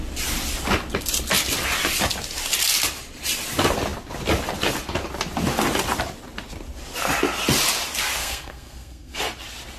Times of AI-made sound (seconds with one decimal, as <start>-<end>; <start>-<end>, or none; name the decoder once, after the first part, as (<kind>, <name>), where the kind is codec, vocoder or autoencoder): 8.2-9.2 (codec, SNAC)